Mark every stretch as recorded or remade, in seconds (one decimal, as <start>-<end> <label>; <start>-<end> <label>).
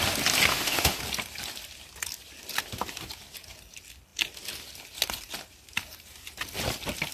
0.0-0.5 recorded; 0.5-1.0 remade; 1.0-7.1 recorded